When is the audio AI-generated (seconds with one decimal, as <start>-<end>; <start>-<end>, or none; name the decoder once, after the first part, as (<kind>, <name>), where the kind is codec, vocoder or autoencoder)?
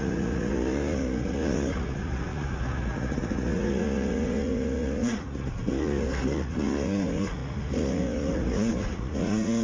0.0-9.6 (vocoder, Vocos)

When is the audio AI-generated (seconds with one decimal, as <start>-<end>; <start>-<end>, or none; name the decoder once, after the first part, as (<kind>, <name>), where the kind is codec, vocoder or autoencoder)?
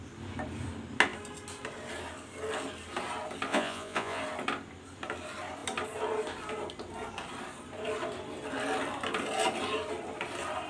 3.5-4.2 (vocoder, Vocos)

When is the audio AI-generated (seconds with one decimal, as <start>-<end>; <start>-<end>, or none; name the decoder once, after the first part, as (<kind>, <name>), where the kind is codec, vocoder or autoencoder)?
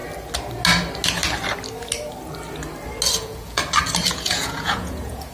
3.2-3.6 (vocoder, Vocos); 4.1-5.3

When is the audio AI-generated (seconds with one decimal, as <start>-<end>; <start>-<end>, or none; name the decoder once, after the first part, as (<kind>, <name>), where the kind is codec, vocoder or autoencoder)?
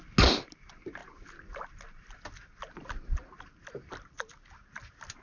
none